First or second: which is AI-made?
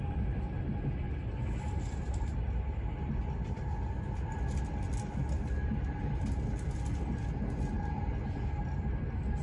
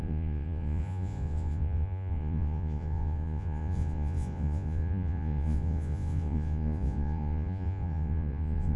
second